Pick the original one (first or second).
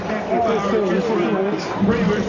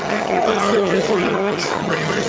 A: first